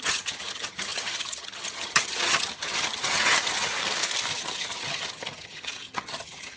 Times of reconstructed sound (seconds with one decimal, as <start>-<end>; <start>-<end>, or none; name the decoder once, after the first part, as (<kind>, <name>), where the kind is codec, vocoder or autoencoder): 0.0-3.7 (vocoder, HiFi-GAN); 4.3-6.6